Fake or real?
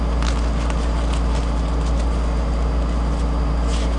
real